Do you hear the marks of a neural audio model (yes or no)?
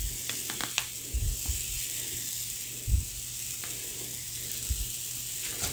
no